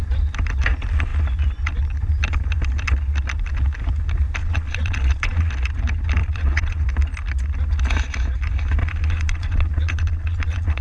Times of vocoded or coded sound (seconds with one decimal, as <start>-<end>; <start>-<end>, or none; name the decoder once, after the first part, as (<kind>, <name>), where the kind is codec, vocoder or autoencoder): 4.4-5.5 (vocoder, Vocos); 6.2-6.8; 8.8-10.8